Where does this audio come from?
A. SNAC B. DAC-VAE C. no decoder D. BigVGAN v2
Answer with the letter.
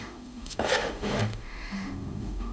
B